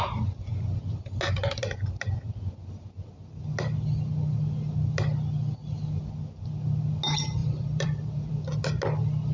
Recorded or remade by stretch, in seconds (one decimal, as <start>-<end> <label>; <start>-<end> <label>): 0.0-7.4 recorded; 7.4-8.3 remade; 8.3-9.3 recorded